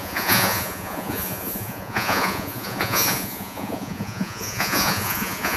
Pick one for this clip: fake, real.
fake